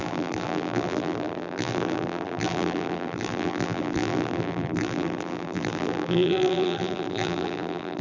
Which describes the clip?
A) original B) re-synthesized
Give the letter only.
B